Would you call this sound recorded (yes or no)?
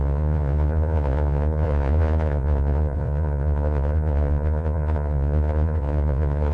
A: no